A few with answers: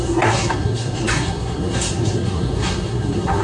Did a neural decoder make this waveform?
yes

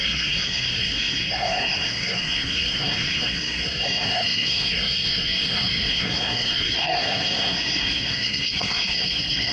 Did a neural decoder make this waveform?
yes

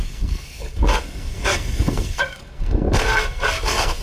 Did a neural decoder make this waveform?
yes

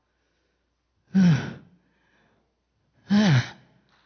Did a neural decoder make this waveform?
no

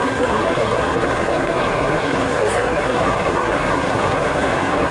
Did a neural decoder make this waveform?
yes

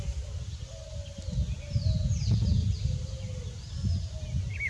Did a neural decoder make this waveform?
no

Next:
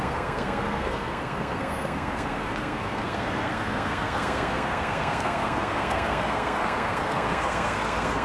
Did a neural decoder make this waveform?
yes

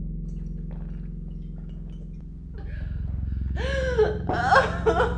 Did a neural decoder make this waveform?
no